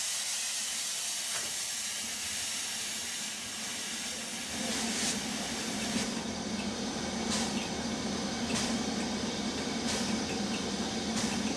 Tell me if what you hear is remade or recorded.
recorded